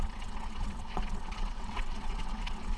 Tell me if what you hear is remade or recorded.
remade